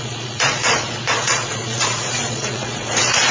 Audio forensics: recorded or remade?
remade